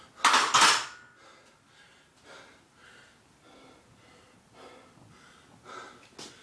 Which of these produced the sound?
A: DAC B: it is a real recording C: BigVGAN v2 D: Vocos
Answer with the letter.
B